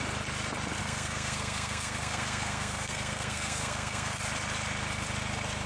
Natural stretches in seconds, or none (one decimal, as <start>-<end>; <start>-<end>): 0.0-0.8; 4.2-5.7